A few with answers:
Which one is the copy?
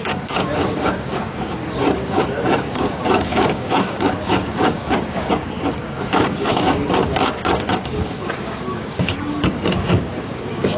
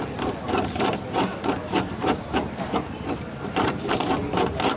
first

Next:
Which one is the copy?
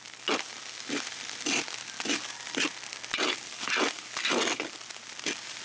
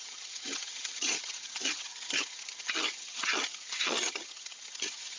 second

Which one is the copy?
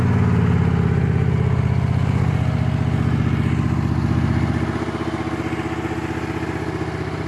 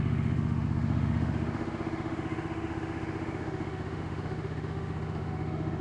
second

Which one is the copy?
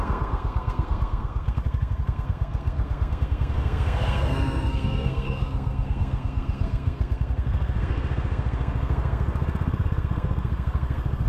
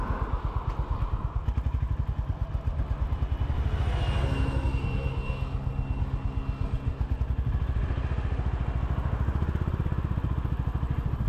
first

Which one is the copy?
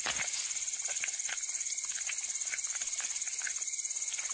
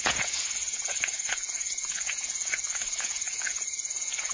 second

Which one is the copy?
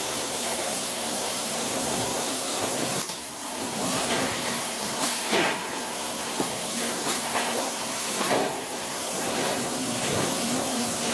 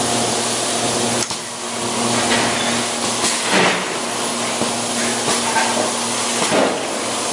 first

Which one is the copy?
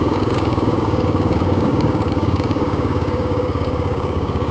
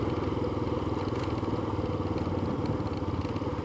first